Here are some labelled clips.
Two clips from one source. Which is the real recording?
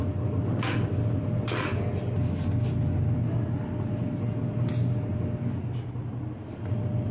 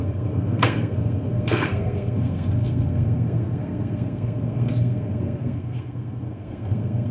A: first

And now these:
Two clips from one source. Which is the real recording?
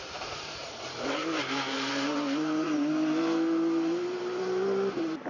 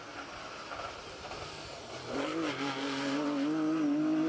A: second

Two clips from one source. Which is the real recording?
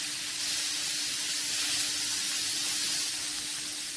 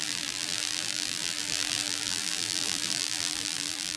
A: first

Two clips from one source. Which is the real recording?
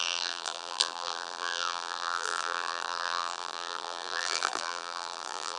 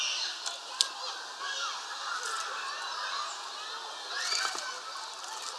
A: second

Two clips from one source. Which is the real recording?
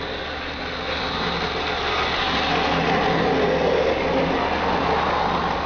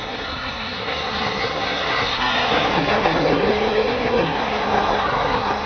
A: first